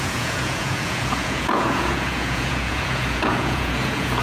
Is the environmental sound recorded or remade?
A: remade